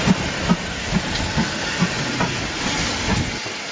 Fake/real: real